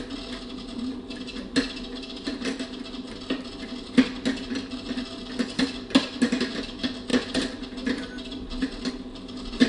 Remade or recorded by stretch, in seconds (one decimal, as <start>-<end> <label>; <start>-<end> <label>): 0.0-9.7 recorded